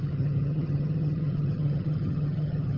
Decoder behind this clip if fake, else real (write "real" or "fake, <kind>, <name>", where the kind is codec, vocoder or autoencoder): fake, vocoder, HiFi-GAN